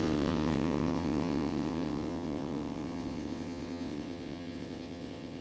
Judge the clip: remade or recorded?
remade